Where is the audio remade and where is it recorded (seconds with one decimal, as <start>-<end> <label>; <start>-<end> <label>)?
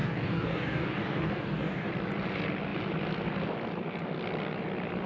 0.0-1.9 remade; 1.9-5.1 recorded